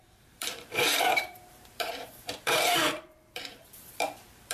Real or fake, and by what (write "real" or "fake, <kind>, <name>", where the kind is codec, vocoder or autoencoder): fake, vocoder, BigVGAN v2